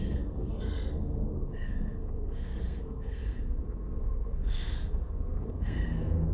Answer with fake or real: fake